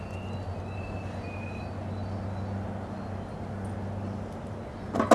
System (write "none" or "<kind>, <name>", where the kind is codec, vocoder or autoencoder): none